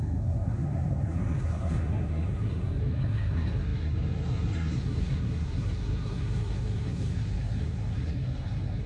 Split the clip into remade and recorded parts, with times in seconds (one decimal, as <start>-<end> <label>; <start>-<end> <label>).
0.0-8.9 remade